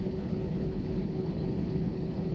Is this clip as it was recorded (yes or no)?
no